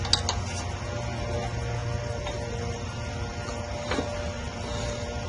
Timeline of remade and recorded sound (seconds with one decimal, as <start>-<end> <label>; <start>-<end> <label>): 0.0-5.3 recorded